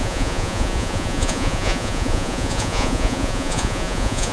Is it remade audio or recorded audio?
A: remade